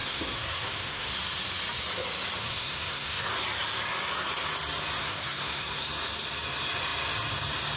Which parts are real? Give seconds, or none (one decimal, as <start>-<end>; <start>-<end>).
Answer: 1.1-2.4; 3.3-5.0; 5.8-7.8